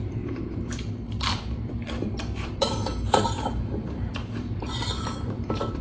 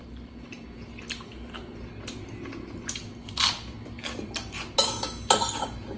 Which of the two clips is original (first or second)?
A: second